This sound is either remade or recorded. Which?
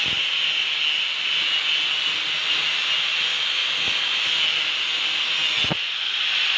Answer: recorded